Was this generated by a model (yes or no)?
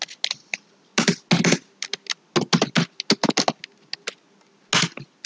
no